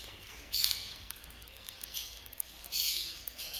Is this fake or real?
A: fake